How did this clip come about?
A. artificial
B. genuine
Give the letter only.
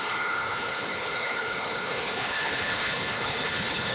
A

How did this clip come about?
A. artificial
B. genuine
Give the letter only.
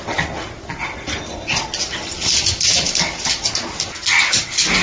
B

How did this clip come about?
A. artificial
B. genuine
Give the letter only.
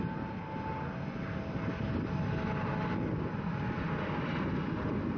B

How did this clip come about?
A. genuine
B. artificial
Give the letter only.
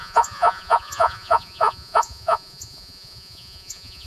B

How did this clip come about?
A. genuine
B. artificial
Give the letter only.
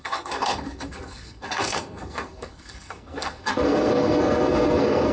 B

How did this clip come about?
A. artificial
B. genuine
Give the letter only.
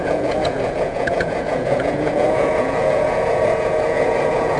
A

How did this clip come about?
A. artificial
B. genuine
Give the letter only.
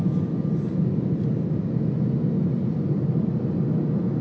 B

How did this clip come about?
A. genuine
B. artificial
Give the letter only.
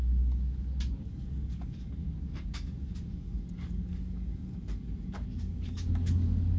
B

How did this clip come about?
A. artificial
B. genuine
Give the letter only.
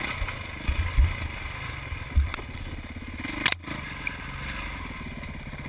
B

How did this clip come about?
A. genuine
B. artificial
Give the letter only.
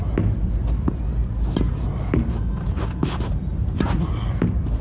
A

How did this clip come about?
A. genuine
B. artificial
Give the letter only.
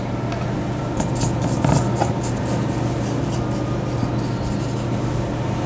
A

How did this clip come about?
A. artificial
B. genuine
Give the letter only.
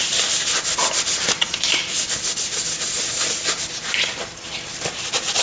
B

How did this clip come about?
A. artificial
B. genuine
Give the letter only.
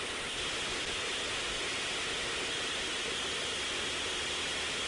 B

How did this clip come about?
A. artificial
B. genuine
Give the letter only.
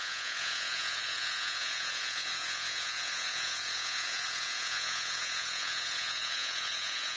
A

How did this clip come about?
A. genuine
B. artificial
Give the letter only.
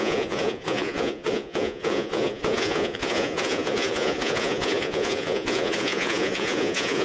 B